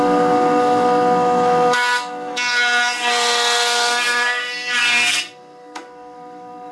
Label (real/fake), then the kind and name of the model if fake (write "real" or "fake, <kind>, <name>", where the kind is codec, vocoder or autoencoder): fake, codec, SNAC